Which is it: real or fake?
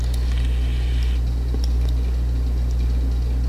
real